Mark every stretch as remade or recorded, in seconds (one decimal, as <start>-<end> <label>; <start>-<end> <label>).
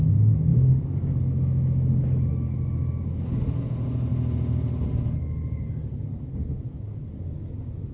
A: 0.0-0.5 recorded; 0.5-2.3 remade; 2.3-7.9 recorded